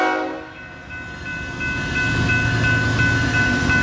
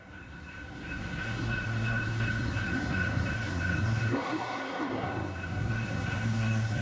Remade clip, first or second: second